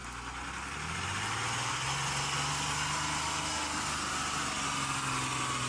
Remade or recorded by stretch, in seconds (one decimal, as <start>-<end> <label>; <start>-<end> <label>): 0.0-5.7 recorded